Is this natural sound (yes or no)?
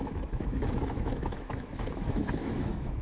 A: no